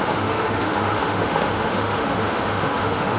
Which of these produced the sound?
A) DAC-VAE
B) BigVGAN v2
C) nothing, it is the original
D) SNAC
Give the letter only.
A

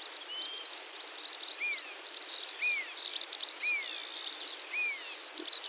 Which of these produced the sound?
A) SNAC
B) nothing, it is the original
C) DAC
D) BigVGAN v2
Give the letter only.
B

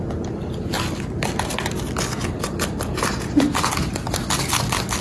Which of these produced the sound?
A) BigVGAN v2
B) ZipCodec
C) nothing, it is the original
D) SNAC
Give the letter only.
C